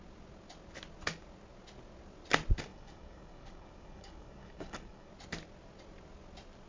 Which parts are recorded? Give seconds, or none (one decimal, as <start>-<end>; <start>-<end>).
0.0-2.7; 5.1-6.7